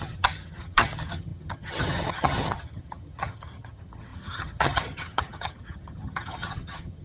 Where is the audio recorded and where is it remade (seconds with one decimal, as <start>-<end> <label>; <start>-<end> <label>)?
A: 0.0-7.0 remade